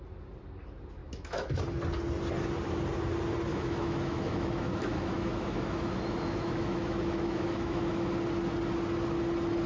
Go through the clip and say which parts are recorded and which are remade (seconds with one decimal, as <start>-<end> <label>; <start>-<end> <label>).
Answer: 0.0-1.0 recorded; 1.0-1.6 remade; 1.6-3.5 recorded; 3.5-8.1 remade; 8.1-9.7 recorded